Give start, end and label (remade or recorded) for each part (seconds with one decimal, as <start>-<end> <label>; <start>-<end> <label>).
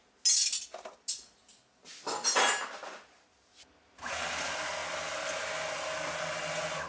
0.0-6.9 recorded